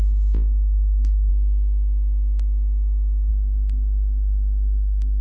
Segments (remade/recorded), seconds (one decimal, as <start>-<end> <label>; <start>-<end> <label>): 0.0-1.3 remade; 1.3-3.3 recorded; 3.3-5.2 remade